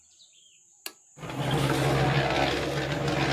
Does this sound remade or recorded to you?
recorded